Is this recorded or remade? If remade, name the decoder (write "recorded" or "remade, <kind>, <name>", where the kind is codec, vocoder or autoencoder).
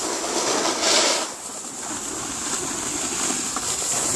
recorded